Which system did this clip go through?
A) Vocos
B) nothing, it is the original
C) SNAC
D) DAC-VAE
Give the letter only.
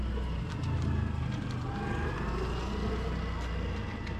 B